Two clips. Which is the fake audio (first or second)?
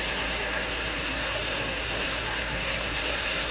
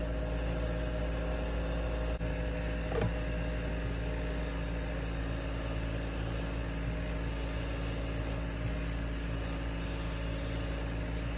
first